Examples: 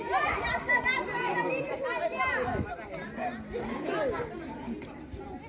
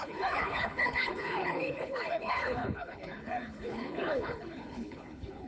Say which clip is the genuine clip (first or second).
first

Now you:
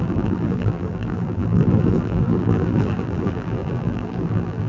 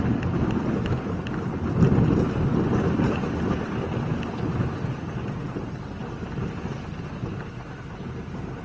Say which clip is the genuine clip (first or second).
second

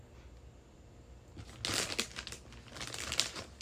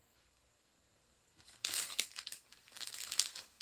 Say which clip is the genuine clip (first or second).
first